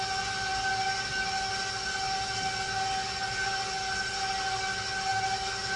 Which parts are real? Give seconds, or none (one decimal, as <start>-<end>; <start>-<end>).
0.0-5.8